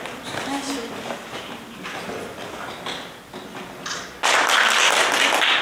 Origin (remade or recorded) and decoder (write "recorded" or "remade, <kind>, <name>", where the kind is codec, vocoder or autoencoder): recorded